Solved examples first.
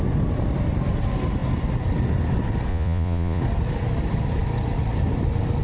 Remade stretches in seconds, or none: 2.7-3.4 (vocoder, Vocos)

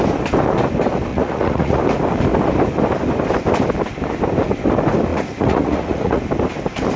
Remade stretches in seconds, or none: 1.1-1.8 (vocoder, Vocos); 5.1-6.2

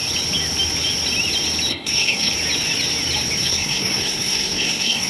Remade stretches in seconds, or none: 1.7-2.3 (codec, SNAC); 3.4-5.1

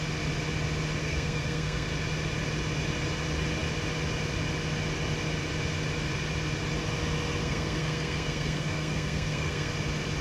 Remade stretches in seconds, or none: 1.0-1.9 (codec, SNAC); 7.4-9.7

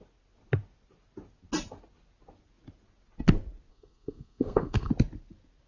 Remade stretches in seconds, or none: 3.7-4.9 (codec, SNAC)